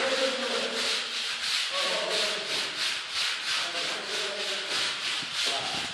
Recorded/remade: recorded